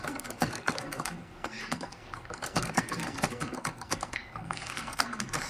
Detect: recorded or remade remade